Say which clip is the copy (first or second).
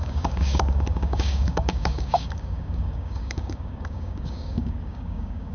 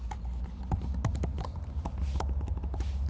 first